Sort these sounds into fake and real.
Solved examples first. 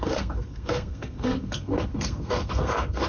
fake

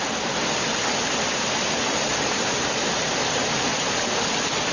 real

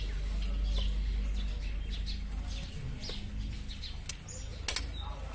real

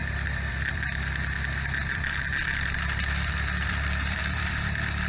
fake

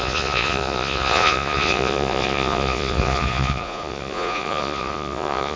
fake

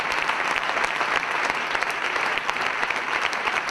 fake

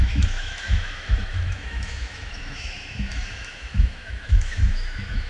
fake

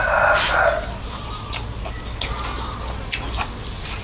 real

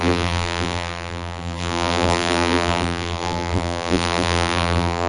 fake